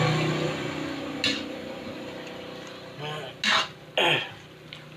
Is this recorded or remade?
recorded